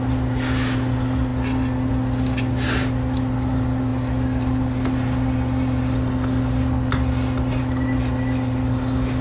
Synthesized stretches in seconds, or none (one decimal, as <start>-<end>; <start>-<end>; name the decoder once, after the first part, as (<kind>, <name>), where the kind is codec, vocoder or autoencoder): none